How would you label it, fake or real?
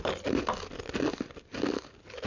real